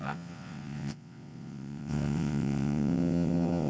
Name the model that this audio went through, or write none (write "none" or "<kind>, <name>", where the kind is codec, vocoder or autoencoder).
vocoder, WaveNeXt